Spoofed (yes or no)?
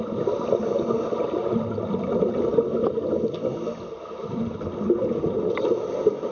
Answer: no